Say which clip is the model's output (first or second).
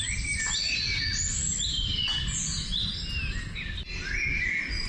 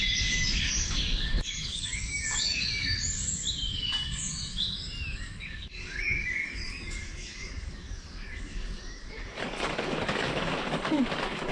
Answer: second